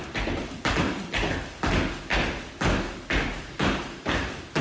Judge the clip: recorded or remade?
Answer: recorded